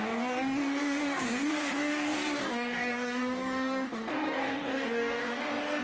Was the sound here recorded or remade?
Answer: remade